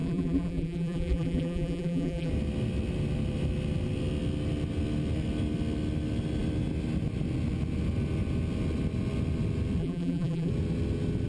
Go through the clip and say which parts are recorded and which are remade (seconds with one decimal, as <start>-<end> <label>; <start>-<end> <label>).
0.0-2.3 remade; 2.3-9.8 recorded; 9.8-10.5 remade; 10.5-11.3 recorded

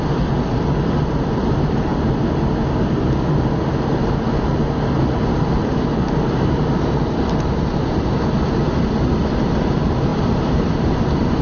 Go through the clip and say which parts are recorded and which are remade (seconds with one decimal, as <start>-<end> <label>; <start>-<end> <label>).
0.0-1.9 remade; 1.9-5.2 recorded; 5.2-11.4 remade

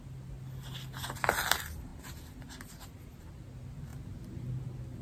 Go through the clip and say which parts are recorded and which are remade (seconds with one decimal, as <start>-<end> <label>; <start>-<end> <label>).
0.0-5.0 recorded

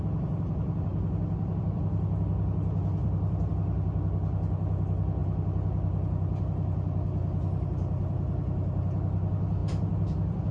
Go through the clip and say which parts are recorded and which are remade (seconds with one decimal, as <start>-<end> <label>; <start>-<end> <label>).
0.0-0.9 recorded; 0.9-1.8 remade; 1.8-3.0 recorded; 3.0-3.5 remade; 3.5-9.6 recorded; 9.6-10.5 remade

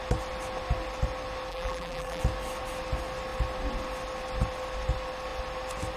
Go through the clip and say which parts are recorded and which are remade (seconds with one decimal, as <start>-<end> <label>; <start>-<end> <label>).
0.0-1.5 recorded; 1.5-2.2 remade; 2.2-6.0 recorded

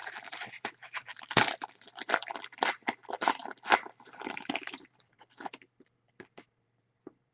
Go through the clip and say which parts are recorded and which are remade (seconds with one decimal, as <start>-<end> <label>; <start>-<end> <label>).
0.0-7.3 remade